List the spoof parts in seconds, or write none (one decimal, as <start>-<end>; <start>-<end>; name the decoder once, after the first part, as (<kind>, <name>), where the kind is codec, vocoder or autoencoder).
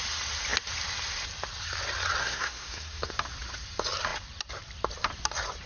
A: 2.2-3.1 (codec, SNAC)